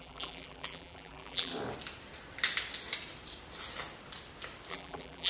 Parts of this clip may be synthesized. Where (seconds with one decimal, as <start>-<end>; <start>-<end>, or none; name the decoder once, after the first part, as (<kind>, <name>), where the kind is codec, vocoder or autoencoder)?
0.0-1.5 (vocoder, BigVGAN v2); 4.7-5.3